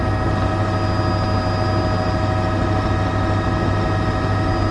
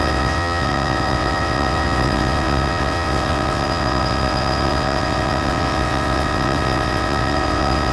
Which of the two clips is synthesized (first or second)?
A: second